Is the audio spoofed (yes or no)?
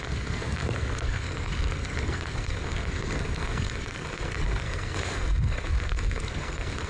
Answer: yes